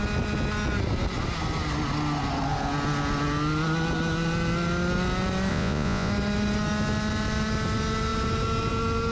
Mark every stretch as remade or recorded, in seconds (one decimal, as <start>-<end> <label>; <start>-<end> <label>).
0.0-5.5 recorded; 5.5-6.1 remade; 6.1-9.1 recorded